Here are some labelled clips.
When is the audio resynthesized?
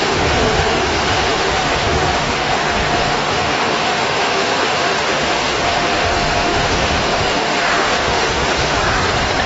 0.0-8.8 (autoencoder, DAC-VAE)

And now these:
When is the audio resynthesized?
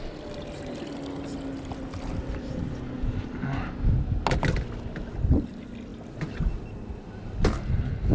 none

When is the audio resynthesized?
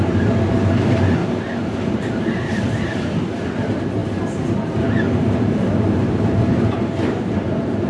0.0-4.0 (vocoder, BigVGAN v2); 5.2-7.9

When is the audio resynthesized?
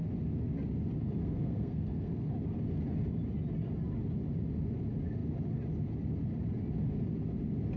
1.2-2.3 (codec, SNAC)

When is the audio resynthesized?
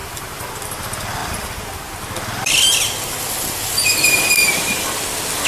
0.0-0.5 (vocoder, BigVGAN v2)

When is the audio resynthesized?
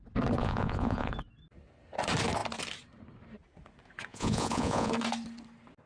0.4-1.1 (vocoder, Vocos); 4.1-4.9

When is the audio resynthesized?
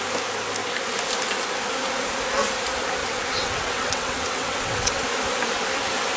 3.0-5.0 (vocoder, WaveNeXt)